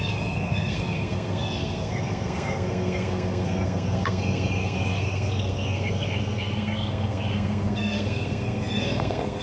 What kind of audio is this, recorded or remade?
remade